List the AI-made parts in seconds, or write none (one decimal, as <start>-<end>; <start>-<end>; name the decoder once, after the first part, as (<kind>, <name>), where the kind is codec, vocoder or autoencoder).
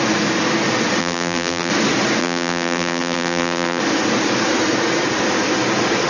1.0-1.7 (vocoder, BigVGAN v2); 2.2-3.8